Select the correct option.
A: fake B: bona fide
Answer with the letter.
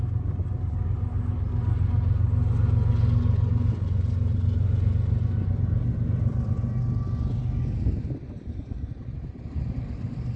B